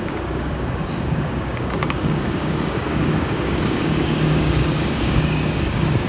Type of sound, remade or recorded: remade